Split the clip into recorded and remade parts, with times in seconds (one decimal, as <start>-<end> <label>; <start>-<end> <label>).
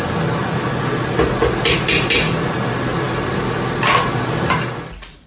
0.0-2.9 recorded; 2.9-5.3 remade